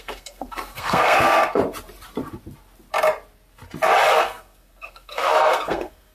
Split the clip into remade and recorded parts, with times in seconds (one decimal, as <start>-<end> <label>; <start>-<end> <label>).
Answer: 0.0-1.6 remade; 1.6-4.2 recorded; 4.2-6.1 remade